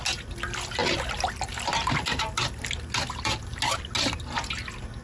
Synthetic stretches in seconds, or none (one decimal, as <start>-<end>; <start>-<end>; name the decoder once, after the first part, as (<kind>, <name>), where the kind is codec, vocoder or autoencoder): none